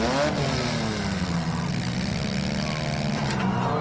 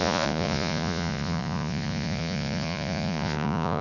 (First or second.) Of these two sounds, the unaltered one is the first